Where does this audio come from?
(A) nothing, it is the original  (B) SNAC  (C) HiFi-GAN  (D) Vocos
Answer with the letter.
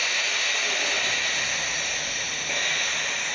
A